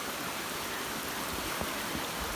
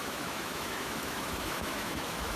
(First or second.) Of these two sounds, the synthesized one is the second